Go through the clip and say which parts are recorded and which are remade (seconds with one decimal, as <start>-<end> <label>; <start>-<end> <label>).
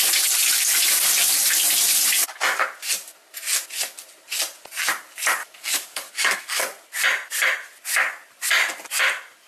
0.0-5.4 recorded; 5.4-6.6 remade; 6.6-9.5 recorded